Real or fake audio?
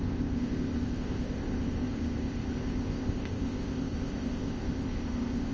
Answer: fake